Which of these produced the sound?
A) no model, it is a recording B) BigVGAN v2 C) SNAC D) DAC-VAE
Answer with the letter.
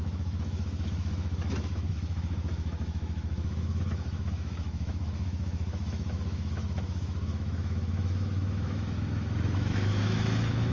D